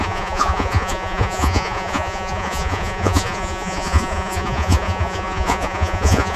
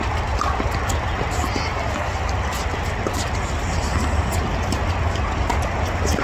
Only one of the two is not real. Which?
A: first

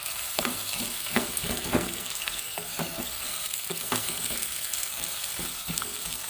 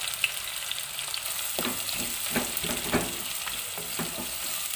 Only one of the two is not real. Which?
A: first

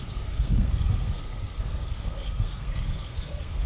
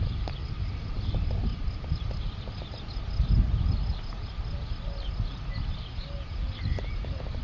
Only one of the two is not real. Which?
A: first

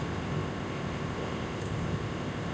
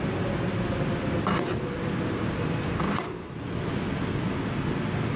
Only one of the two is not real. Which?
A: first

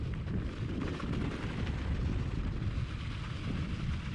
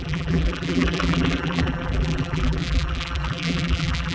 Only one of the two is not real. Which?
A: second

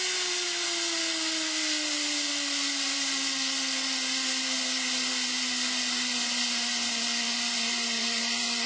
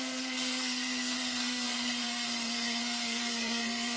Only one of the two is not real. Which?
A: second